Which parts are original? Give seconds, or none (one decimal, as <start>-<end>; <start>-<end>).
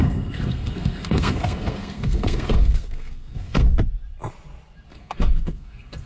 3.7-4.9